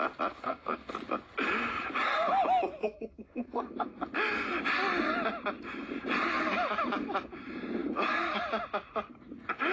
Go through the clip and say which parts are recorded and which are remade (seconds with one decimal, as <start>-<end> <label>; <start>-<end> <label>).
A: 0.0-0.4 recorded; 0.4-0.9 remade; 0.9-2.8 recorded; 2.8-4.0 remade; 4.0-9.7 recorded